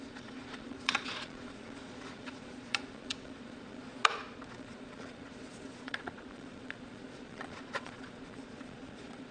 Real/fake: fake